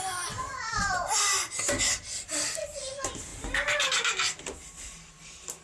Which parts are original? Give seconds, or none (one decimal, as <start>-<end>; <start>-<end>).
0.5-2.6; 3.3-4.8